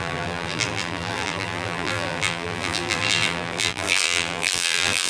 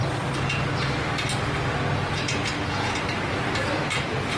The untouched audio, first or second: second